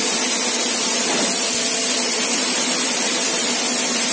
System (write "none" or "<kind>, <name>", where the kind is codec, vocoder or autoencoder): vocoder, BigVGAN v2